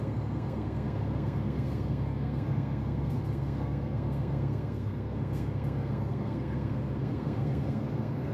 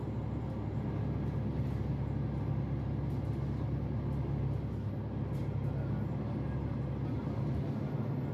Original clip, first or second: second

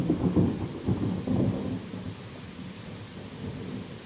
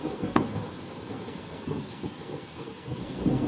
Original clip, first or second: first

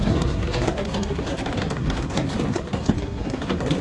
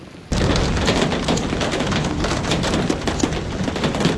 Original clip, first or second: second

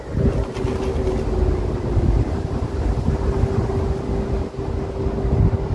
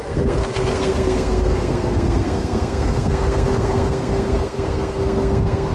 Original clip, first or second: first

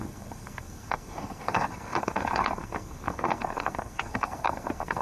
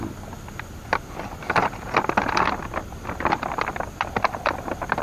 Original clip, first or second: second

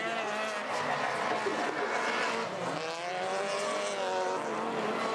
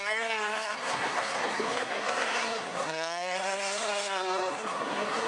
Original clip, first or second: first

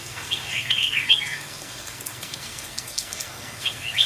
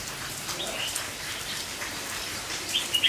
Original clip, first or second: second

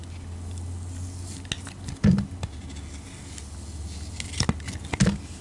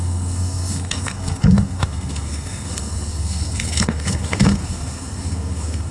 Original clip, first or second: first